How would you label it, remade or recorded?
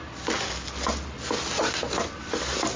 recorded